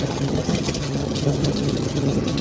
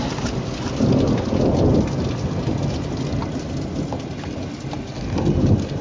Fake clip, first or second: first